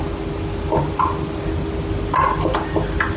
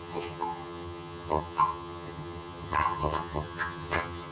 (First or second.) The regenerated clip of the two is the second